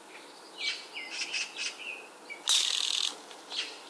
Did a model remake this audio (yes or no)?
no